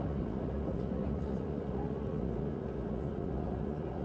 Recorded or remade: remade